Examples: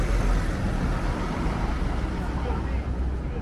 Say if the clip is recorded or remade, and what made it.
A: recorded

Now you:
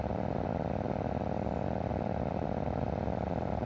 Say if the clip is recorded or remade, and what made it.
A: recorded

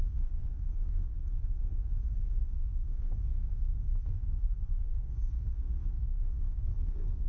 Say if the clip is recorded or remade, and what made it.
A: remade, codec, SNAC